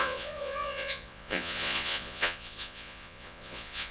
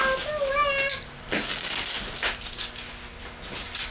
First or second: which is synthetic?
first